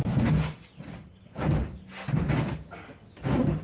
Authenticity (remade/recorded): recorded